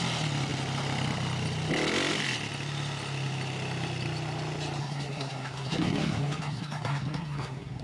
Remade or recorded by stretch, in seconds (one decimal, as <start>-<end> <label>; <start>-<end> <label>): 0.0-4.8 recorded; 4.8-7.8 remade